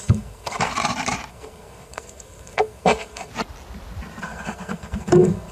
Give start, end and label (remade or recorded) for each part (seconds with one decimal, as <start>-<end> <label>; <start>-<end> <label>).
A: 0.0-0.7 remade; 0.7-1.3 recorded; 1.3-3.3 remade; 3.3-4.2 recorded; 4.2-5.5 remade